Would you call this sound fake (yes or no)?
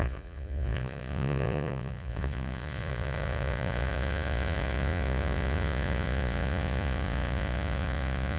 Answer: yes